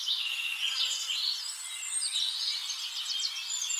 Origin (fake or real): real